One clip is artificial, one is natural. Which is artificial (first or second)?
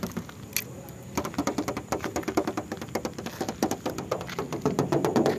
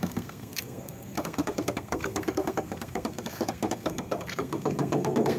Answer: second